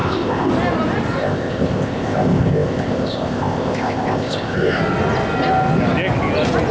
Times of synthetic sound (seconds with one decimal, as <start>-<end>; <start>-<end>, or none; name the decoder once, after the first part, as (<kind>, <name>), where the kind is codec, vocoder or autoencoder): 0.0-0.5 (codec, ZipCodec); 1.2-4.8